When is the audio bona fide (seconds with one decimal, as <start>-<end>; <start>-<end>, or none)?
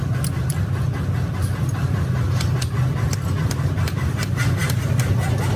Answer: 0.0-5.6